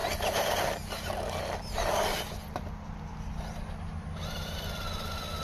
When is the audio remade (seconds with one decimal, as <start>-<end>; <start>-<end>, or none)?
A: none